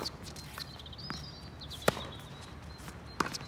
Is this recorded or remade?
recorded